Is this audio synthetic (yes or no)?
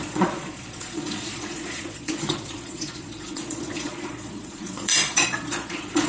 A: yes